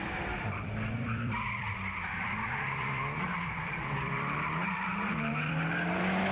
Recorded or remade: remade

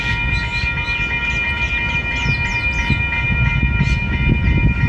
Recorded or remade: recorded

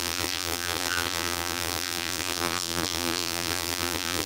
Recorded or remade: remade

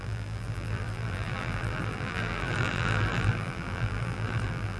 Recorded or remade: remade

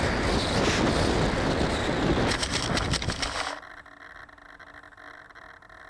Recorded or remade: recorded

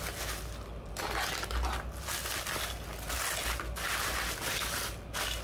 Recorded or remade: recorded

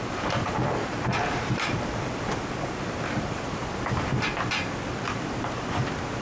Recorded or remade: remade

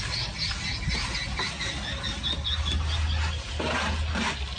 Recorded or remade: recorded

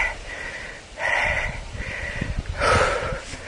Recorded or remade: remade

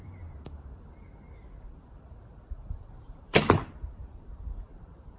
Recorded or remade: remade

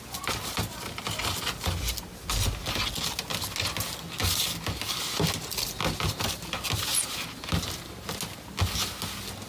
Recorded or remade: recorded